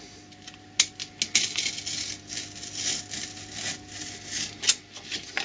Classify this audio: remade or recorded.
recorded